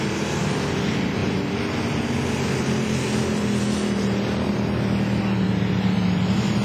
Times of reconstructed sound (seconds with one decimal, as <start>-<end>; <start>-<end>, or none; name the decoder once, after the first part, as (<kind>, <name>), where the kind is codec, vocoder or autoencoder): none

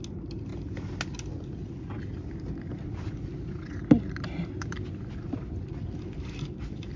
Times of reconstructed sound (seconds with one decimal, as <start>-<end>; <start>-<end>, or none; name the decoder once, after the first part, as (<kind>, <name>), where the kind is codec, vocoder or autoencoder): none

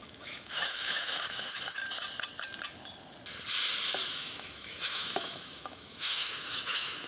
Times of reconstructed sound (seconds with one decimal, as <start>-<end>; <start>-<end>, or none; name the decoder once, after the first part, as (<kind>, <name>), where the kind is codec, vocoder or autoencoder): 0.0-1.8 (autoencoder, DAC-VAE); 4.1-7.1